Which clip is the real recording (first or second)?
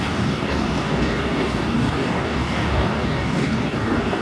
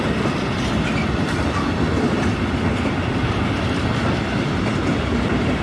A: second